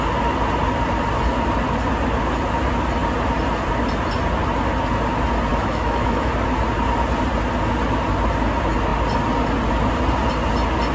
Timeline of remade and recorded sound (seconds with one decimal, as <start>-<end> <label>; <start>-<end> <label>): 0.0-5.5 recorded; 5.5-6.3 remade; 6.3-10.9 recorded